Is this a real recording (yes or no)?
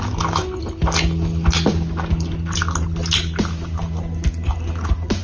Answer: yes